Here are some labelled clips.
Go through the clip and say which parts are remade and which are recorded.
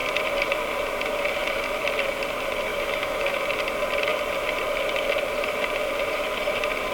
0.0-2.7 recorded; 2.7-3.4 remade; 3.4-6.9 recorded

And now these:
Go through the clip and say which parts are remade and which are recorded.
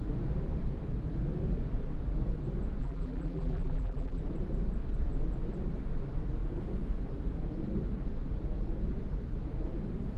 0.0-2.8 recorded; 2.8-4.2 remade; 4.2-10.2 recorded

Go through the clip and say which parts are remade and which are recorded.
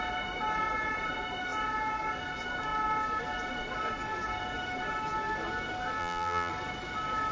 0.0-6.0 recorded; 6.0-6.5 remade; 6.5-7.3 recorded